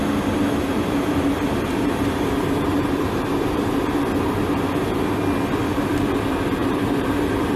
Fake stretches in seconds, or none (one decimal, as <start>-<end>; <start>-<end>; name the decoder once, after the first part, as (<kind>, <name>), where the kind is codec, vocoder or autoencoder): 0.7-3.8 (vocoder, BigVGAN v2); 6.6-7.6